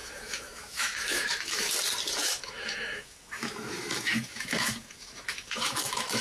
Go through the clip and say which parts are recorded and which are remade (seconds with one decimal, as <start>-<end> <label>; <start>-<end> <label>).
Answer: 0.0-1.7 remade; 1.7-2.2 recorded; 2.2-6.2 remade